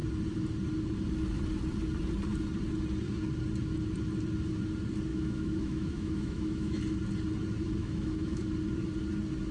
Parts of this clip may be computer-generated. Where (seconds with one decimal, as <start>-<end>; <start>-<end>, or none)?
5.1-6.8; 7.8-8.4